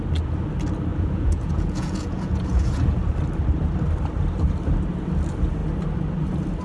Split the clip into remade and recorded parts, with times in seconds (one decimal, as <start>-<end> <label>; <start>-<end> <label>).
0.0-0.9 recorded; 0.9-2.8 remade; 2.8-6.6 recorded